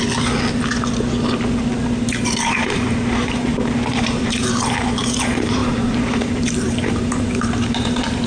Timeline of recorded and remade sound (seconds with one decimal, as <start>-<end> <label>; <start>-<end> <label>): 0.0-2.0 recorded; 2.0-8.3 remade